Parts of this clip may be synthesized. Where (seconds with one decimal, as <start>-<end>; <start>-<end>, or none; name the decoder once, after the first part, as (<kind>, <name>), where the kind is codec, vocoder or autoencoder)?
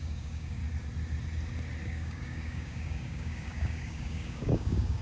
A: 0.0-0.6 (codec, DAC); 1.8-5.0